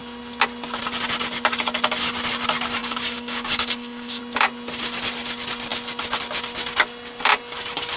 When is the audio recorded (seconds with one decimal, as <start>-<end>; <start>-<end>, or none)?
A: 0.0-2.8; 4.2-8.0